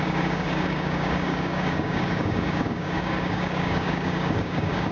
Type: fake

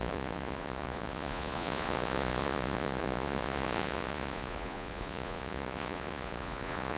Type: fake